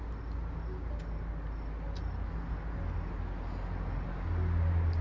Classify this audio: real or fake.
real